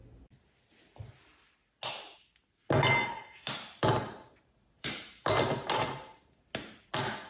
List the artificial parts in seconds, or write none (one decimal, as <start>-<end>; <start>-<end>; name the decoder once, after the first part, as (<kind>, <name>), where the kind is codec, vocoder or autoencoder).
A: 3.0-6.4 (vocoder, BigVGAN v2)